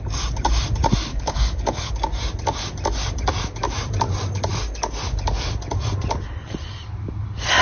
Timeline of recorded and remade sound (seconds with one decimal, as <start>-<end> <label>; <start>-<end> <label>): 0.0-1.1 recorded; 1.1-1.9 remade; 1.9-7.6 recorded